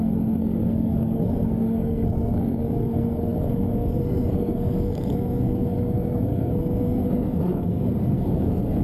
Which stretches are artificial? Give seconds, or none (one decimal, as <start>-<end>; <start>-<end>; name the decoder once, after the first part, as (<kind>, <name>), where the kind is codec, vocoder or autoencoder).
0.0-8.8 (codec, SNAC)